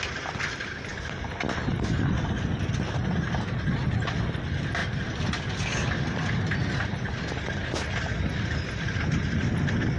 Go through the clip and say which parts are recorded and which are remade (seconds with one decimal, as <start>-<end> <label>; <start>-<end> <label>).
0.0-4.8 recorded; 4.8-5.5 remade; 5.5-10.0 recorded

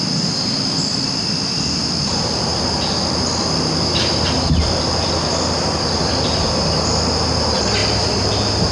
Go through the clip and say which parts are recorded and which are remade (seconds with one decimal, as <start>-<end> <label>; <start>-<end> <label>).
0.0-7.8 recorded; 7.8-8.7 remade

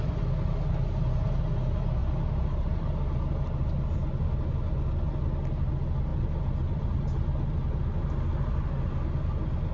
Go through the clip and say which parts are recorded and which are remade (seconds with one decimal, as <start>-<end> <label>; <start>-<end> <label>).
0.0-6.1 recorded; 6.1-7.0 remade; 7.0-9.7 recorded

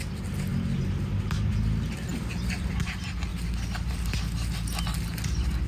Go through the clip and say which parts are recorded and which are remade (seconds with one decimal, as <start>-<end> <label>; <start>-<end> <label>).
0.0-5.7 recorded

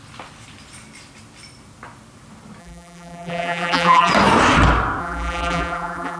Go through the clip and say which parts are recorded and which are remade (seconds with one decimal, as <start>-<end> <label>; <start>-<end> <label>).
0.0-2.6 recorded; 2.6-4.1 remade; 4.1-5.0 recorded; 5.0-6.2 remade

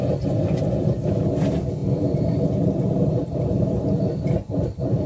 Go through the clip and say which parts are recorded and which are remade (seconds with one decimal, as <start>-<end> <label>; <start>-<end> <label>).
0.0-1.8 recorded; 1.8-5.1 remade

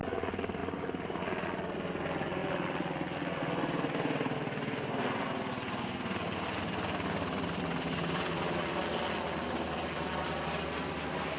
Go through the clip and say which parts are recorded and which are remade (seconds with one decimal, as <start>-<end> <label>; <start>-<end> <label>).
0.0-0.6 recorded; 0.6-1.2 remade; 1.2-11.4 recorded